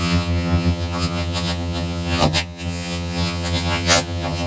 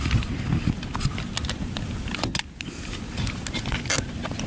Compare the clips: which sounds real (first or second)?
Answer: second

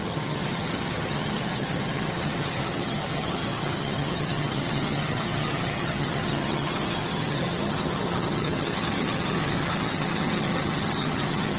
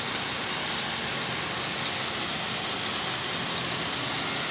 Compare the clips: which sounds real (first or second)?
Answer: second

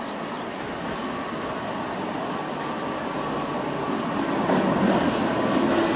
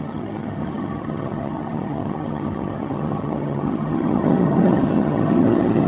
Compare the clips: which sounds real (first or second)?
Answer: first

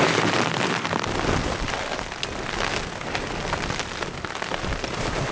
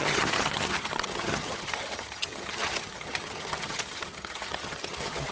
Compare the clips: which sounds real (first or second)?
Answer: first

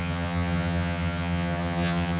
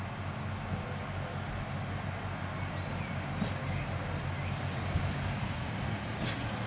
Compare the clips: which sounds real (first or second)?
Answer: second